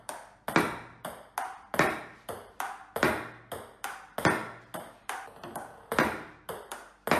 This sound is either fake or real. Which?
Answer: real